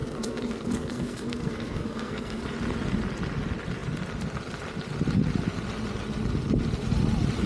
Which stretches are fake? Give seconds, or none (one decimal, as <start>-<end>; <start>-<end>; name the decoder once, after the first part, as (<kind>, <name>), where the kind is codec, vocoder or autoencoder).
0.0-2.4 (codec, SNAC)